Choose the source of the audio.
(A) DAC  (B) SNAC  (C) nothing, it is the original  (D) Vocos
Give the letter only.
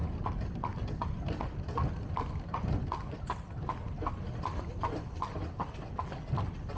C